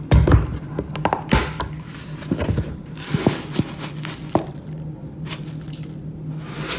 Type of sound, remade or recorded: recorded